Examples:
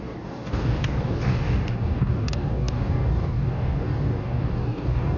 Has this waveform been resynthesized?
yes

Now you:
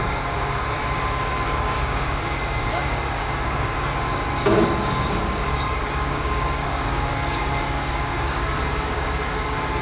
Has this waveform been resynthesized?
yes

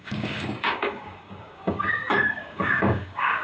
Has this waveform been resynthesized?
yes